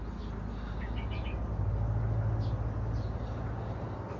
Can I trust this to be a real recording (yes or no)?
yes